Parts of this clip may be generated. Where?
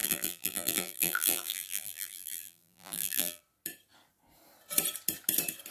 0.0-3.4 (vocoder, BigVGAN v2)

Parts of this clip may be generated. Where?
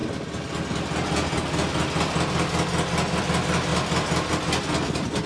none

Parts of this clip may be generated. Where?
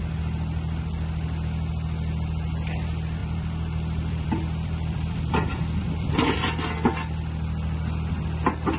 3.2-5.3 (vocoder, BigVGAN v2); 5.8-6.6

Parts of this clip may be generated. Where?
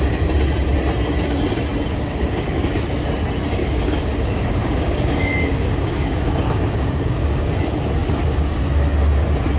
1.9-2.8 (codec, DAC); 3.6-7.5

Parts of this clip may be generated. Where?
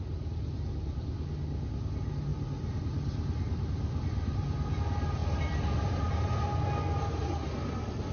none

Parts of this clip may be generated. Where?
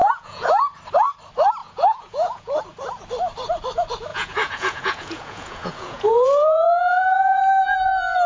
0.0-0.5 (vocoder, Vocos); 1.6-2.6; 4.1-7.4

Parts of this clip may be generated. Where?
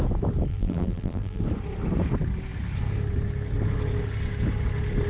0.5-1.4 (vocoder, BigVGAN v2)